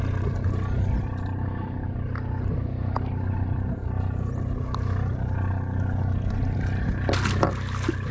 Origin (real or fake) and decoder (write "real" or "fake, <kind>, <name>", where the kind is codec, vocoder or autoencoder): real